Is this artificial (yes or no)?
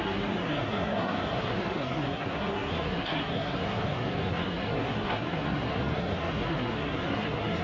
yes